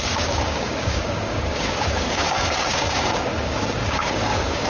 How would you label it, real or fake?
fake